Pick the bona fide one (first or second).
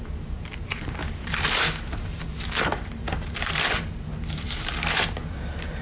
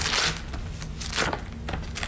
second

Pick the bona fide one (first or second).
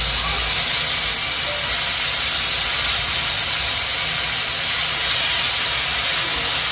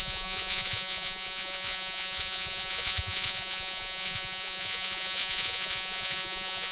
first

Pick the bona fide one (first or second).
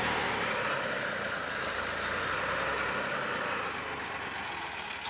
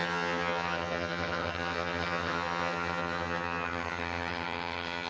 first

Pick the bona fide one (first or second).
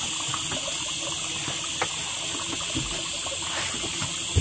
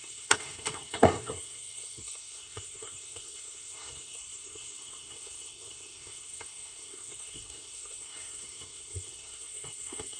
first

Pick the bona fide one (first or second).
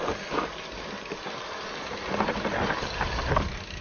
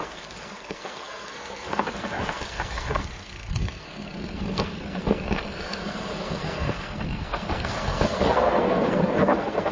first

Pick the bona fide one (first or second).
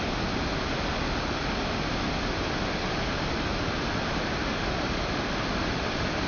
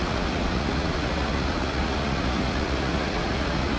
first